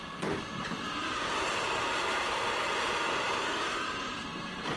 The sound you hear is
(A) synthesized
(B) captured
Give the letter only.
A